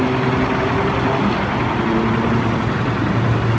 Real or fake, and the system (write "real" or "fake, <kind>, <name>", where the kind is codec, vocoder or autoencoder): real